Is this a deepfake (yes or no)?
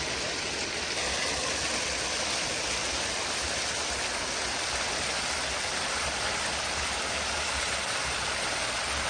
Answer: no